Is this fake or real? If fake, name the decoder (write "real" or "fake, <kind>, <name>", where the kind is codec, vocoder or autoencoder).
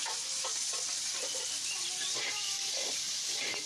fake, vocoder, BigVGAN v2